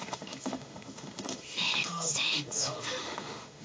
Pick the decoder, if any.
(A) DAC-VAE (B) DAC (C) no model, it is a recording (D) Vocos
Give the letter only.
A